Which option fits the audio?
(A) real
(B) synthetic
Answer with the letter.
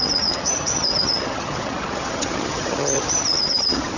B